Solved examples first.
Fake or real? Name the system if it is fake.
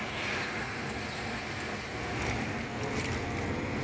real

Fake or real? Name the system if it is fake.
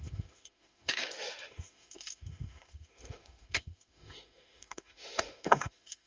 fake, autoencoder, DAC-VAE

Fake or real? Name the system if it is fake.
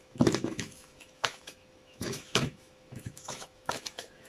fake, autoencoder, DAC-VAE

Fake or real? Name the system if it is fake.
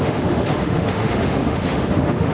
fake, autoencoder, DAC-VAE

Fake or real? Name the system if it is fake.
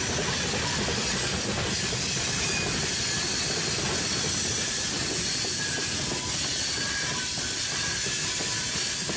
real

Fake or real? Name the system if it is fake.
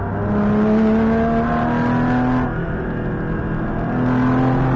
real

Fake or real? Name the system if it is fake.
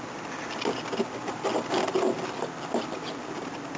real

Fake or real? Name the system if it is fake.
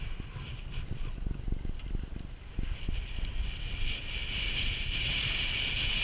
real